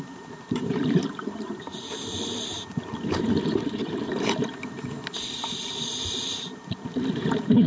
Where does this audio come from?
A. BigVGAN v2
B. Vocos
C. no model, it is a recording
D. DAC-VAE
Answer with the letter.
A